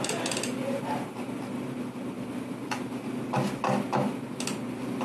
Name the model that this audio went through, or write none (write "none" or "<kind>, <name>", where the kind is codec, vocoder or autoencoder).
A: none